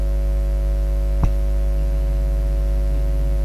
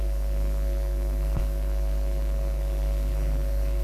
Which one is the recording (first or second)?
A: first